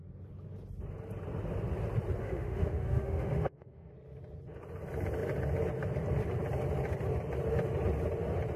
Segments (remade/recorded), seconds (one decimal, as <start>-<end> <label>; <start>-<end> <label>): 0.0-2.2 recorded; 2.2-3.9 remade; 3.9-8.6 recorded